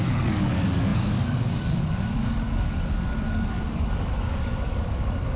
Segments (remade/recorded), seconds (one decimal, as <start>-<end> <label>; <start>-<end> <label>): 0.0-5.4 remade